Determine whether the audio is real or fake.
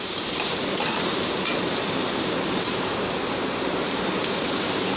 fake